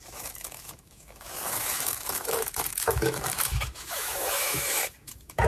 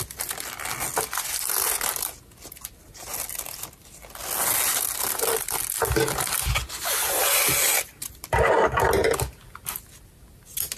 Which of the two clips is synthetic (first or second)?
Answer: first